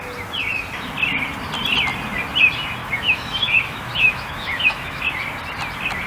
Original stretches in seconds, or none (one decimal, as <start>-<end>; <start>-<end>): 0.0-2.8; 5.0-6.1